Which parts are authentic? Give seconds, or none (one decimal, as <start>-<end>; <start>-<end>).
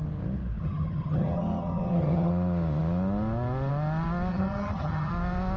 0.0-0.6; 2.3-4.3; 5.1-5.6